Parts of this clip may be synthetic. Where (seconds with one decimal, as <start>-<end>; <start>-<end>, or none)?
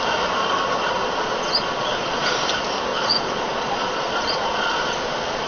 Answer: 1.0-2.4; 2.9-5.5